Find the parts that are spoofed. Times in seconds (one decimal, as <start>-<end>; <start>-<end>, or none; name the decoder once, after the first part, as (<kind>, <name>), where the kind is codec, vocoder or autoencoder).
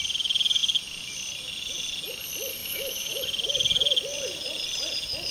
2.6-3.2 (autoencoder, DAC-VAE)